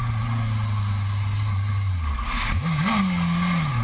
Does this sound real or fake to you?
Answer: real